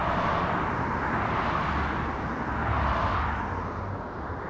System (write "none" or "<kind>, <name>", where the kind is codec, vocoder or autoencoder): none